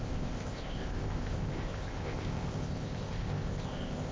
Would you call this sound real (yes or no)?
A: no